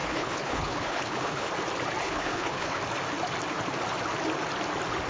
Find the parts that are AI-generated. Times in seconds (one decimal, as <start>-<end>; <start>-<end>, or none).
0.0-1.5; 2.0-2.8